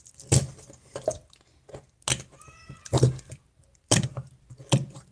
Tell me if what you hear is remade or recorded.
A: recorded